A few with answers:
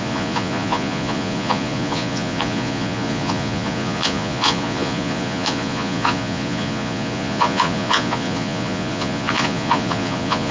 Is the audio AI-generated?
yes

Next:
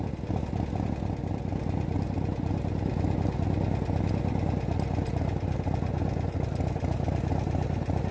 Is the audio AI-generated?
no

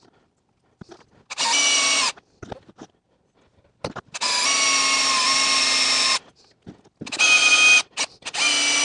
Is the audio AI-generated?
no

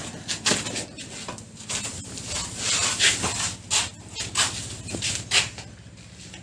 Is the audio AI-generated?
no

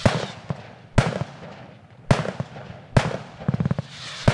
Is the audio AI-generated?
no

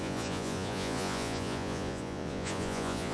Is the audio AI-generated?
yes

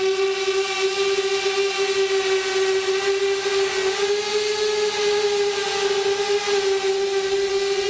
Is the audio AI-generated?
no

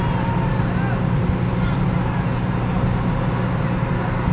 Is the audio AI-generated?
no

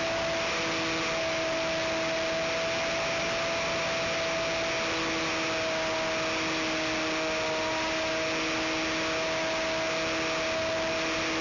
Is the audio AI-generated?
no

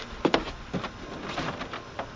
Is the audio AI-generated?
no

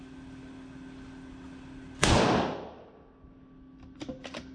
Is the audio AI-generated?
no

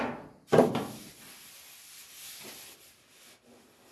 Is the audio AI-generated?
no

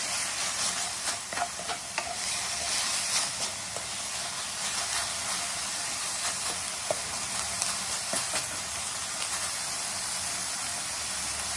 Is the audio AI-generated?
no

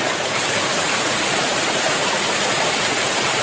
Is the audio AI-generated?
yes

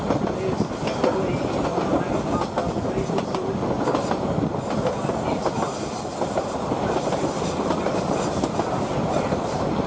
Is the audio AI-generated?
no